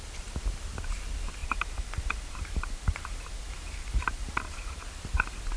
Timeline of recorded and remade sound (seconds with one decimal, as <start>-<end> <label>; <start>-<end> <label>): 0.0-1.4 recorded; 1.4-4.8 remade; 4.8-5.6 recorded